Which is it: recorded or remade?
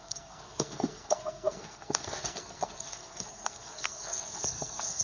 remade